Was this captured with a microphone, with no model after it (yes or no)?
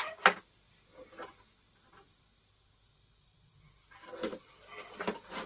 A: yes